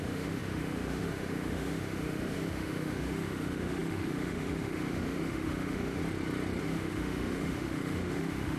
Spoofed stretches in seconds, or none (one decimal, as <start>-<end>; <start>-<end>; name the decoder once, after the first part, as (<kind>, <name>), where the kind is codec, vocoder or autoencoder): 0.0-6.0 (autoencoder, DAC-VAE); 6.6-8.6